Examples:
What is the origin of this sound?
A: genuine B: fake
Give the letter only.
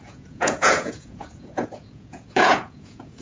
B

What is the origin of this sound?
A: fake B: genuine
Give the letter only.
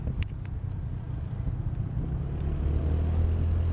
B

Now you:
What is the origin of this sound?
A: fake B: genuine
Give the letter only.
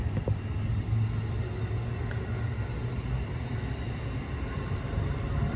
B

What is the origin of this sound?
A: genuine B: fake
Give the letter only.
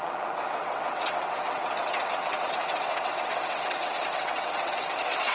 B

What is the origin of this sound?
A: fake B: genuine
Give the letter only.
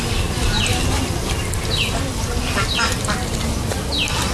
B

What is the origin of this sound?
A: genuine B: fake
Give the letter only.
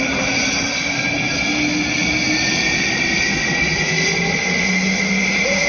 A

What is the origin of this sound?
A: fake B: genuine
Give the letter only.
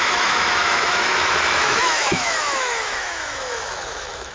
A